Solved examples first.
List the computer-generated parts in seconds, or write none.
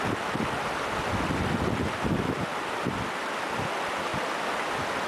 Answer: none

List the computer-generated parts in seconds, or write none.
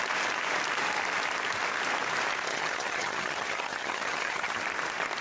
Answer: 2.5-4.6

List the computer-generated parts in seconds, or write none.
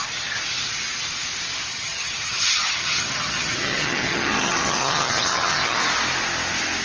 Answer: 1.7-5.8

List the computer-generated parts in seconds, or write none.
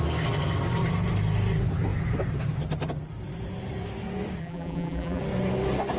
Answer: 4.4-5.2